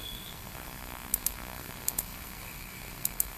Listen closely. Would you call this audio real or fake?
fake